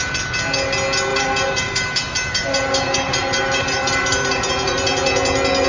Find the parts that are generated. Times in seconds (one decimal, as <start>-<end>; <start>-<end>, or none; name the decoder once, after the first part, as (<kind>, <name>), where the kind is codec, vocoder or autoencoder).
1.1-4.5 (vocoder, BigVGAN v2)